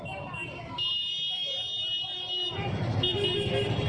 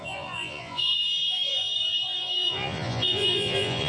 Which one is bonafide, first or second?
first